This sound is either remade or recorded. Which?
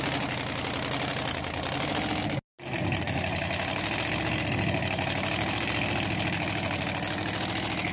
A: recorded